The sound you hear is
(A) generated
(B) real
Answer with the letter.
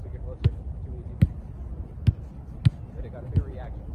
B